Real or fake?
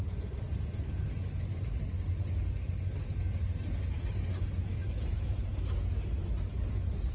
real